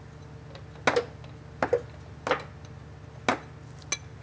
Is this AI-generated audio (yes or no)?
no